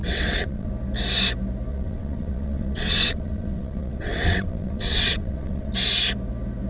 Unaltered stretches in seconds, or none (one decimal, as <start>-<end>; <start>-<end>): 0.7-1.7; 5.7-6.7